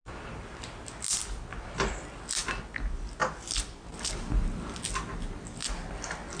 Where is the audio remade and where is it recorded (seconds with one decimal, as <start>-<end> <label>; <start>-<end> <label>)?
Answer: 0.0-6.4 recorded